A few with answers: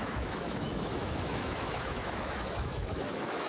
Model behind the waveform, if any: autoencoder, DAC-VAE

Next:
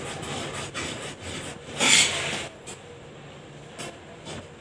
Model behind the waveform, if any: none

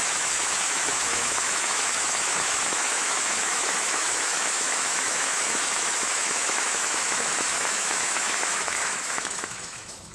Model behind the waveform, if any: autoencoder, DAC-VAE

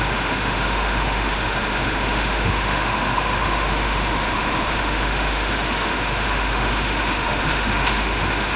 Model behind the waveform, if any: autoencoder, DAC-VAE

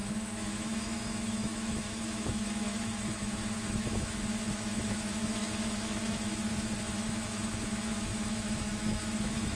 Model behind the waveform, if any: autoencoder, DAC-VAE